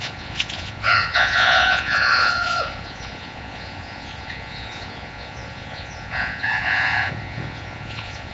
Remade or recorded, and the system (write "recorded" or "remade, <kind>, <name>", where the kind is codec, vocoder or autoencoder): remade, vocoder, Vocos